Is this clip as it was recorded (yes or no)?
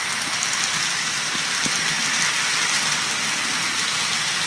yes